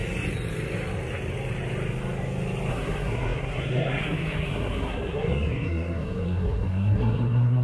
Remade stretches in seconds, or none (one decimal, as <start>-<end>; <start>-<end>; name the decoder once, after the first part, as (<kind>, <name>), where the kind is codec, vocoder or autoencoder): 2.7-7.6 (codec, SNAC)